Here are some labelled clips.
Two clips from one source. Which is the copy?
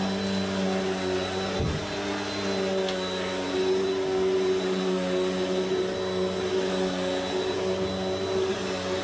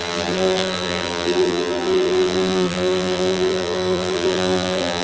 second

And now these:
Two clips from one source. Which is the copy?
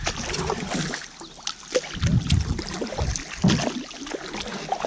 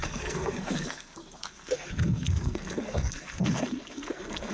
second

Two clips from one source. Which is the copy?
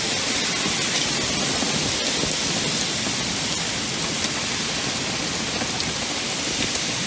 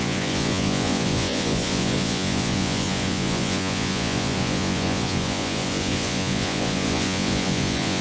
second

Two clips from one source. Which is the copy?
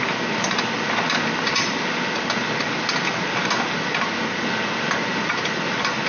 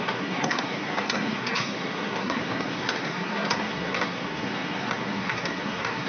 second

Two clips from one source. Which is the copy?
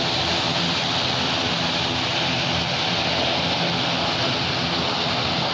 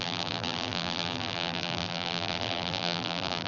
second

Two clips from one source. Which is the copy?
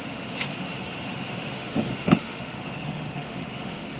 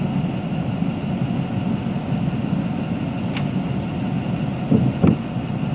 first